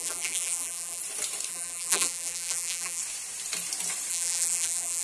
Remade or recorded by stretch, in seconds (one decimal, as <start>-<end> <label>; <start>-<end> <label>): 0.0-1.0 remade; 1.0-1.5 recorded; 1.5-3.0 remade; 3.0-4.1 recorded; 4.1-5.0 remade